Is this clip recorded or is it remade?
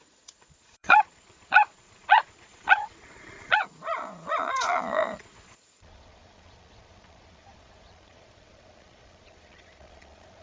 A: remade